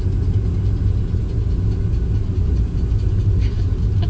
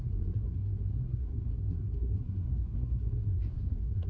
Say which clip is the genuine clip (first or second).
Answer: first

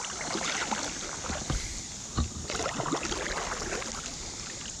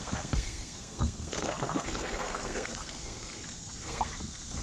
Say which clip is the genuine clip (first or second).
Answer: first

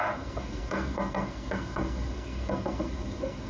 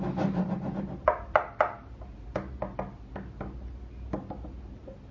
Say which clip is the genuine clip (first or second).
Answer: second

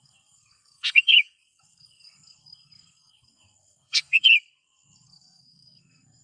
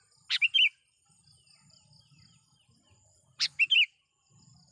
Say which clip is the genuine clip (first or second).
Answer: second